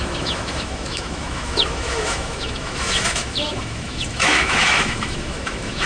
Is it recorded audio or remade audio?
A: remade